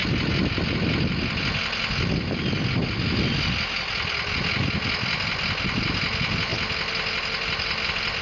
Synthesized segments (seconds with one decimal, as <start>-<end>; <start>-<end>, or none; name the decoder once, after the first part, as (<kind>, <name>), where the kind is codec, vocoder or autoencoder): none